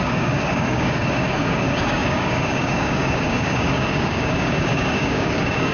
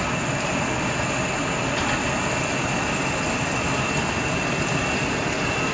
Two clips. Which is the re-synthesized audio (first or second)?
first